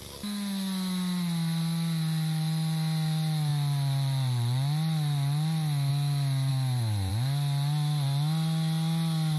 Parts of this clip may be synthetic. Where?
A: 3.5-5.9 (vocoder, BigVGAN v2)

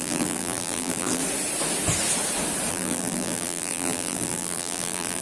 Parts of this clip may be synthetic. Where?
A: 0.0-1.2 (vocoder, BigVGAN v2); 2.7-5.2

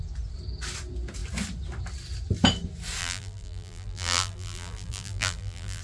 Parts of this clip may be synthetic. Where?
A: 3.0-5.8 (vocoder, BigVGAN v2)

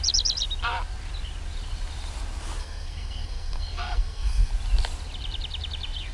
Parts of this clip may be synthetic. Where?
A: 2.6-4.5 (codec, SNAC)

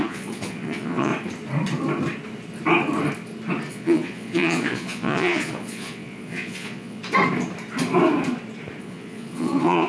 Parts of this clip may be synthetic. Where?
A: 0.0-1.1 (vocoder, Vocos); 3.7-7.0; 8.8-9.9

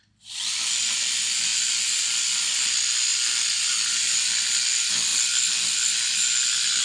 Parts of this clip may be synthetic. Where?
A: none

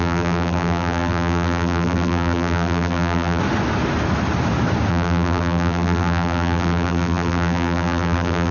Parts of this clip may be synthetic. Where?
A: 0.0-3.4 (vocoder, BigVGAN v2); 4.9-8.5

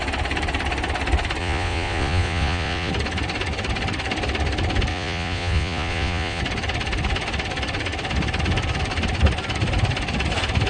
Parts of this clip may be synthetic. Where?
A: 1.4-2.9 (vocoder, Vocos); 4.9-6.4